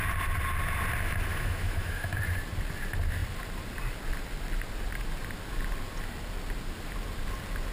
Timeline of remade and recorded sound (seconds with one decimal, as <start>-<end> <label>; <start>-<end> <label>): 0.0-1.3 recorded; 1.3-2.2 remade; 2.2-7.7 recorded